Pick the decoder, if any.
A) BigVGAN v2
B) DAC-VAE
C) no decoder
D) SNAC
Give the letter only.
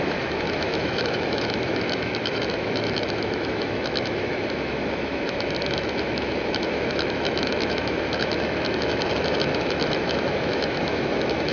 B